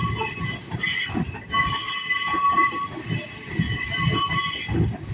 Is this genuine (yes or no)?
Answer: yes